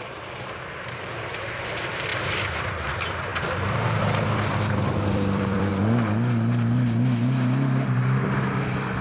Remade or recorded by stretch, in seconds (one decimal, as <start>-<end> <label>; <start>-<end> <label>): 0.0-3.3 remade; 3.3-4.0 recorded; 4.0-5.7 remade; 5.7-8.6 recorded; 8.6-9.0 remade